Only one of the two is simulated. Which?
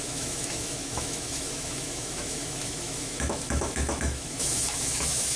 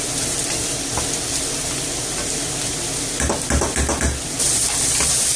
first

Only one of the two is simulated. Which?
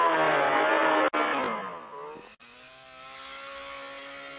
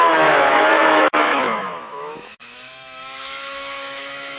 second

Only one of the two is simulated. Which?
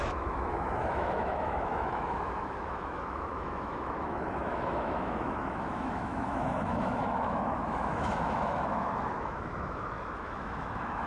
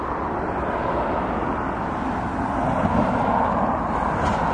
first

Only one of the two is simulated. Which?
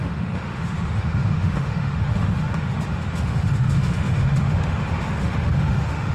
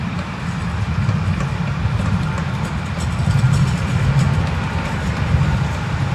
first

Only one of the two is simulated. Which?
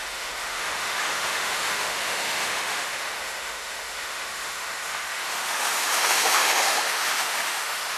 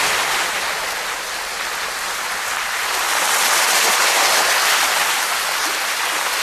first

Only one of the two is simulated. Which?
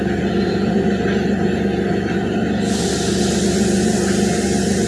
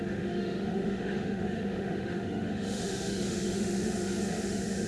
second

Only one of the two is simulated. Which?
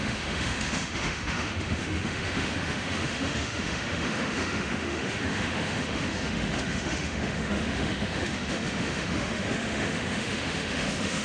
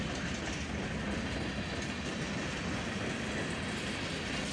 first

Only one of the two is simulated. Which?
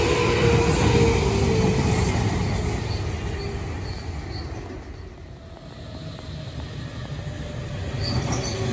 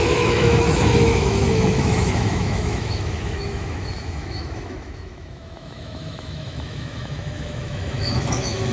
second